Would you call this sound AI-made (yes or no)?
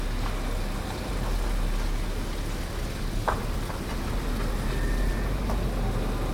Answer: no